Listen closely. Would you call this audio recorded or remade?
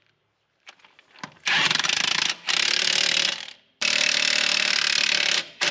remade